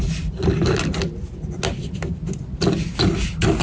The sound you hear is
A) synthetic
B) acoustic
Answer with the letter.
B